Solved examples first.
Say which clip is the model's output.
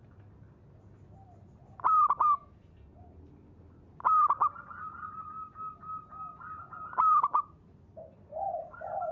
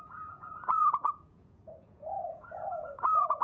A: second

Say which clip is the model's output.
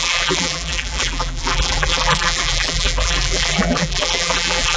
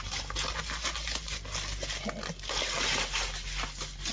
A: first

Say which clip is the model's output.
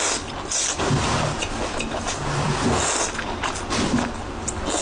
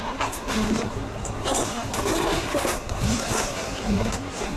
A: second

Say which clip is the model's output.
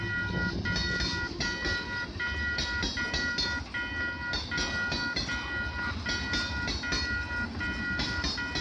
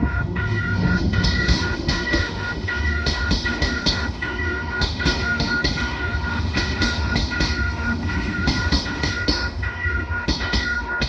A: second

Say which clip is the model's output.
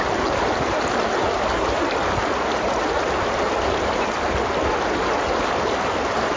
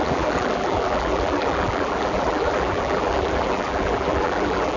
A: second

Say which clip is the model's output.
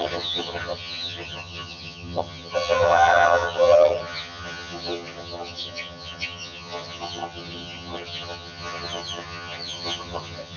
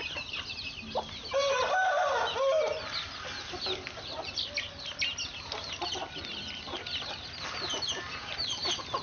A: first